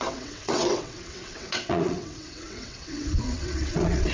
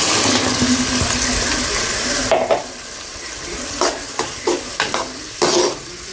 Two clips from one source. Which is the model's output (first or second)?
first